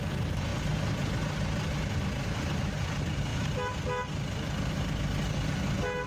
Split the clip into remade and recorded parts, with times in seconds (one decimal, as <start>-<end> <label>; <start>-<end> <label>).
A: 0.0-6.1 recorded